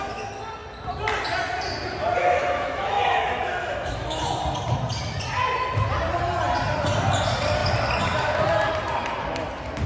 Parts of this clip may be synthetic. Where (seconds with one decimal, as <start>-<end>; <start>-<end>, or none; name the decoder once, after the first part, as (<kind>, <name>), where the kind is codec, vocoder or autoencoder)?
2.2-4.2 (autoencoder, DAC-VAE)